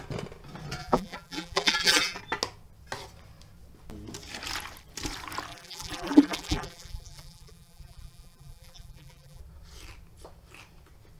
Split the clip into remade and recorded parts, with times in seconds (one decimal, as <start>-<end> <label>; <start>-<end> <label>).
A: 0.0-0.8 recorded; 0.8-2.2 remade; 2.2-5.5 recorded; 5.5-9.4 remade; 9.4-11.2 recorded

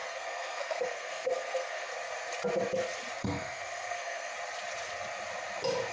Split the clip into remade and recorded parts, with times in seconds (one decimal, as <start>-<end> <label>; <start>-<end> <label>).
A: 0.0-1.9 remade; 1.9-3.2 recorded; 3.2-4.3 remade; 4.3-5.9 recorded

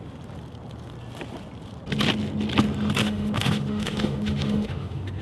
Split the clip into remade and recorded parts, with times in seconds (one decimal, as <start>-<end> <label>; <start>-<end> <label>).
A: 0.0-3.0 recorded; 3.0-5.2 remade